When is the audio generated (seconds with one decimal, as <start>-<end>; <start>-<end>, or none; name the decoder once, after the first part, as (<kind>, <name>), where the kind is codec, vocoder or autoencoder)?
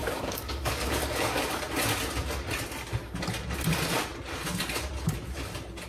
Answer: 0.0-1.5 (codec, DAC)